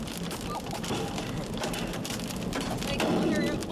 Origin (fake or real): real